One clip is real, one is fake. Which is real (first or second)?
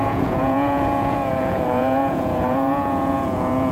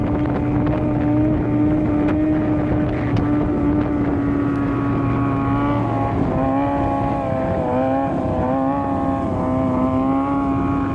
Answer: second